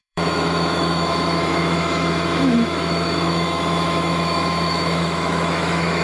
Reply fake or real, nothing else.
fake